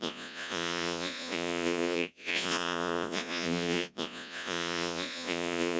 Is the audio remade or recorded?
remade